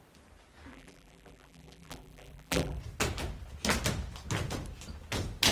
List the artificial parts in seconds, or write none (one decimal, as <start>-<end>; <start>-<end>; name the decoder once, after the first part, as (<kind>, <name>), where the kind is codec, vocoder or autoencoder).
0.7-2.8 (vocoder, BigVGAN v2)